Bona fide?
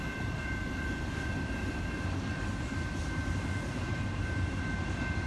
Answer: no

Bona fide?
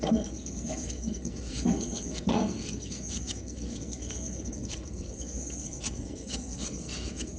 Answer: no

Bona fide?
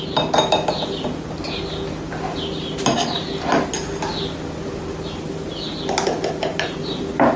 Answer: yes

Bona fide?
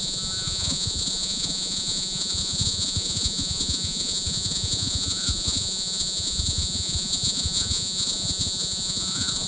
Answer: no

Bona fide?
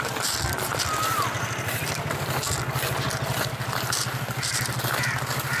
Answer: yes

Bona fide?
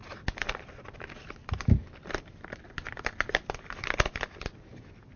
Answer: yes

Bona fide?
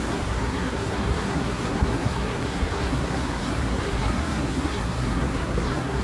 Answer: no